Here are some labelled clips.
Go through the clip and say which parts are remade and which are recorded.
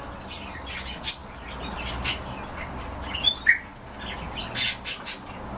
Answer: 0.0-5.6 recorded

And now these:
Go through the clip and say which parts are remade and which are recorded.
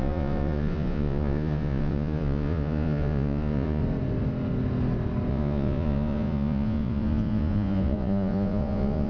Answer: 0.0-3.8 remade; 3.8-5.3 recorded; 5.3-9.1 remade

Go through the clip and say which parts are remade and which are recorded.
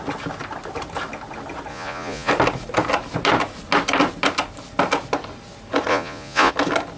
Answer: 0.0-1.7 recorded; 1.7-2.3 remade; 2.3-5.9 recorded; 5.9-6.5 remade; 6.5-7.0 recorded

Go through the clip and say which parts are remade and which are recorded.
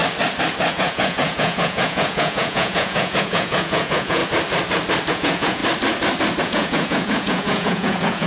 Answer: 0.0-0.7 recorded; 0.7-4.2 remade; 4.2-5.1 recorded; 5.1-5.6 remade; 5.6-6.4 recorded; 6.4-8.3 remade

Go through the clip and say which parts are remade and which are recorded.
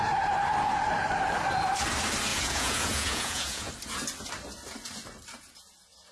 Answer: 0.0-2.3 recorded; 2.3-3.7 remade; 3.7-6.1 recorded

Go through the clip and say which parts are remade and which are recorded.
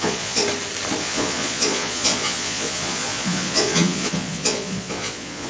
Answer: 0.0-0.4 remade; 0.4-1.0 recorded; 1.0-5.5 remade